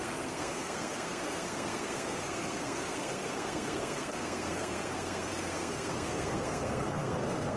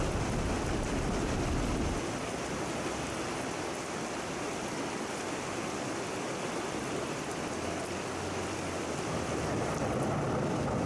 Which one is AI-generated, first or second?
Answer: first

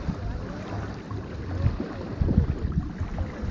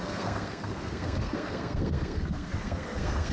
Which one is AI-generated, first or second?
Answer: second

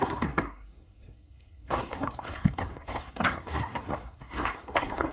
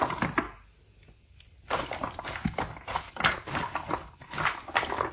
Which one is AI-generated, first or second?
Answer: first